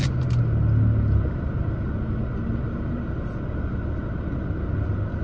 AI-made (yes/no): no